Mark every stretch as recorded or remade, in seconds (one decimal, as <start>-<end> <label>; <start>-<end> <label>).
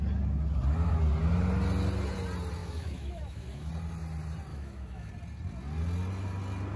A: 0.0-2.6 recorded; 2.6-3.7 remade; 3.7-4.5 recorded; 4.5-5.1 remade; 5.1-6.8 recorded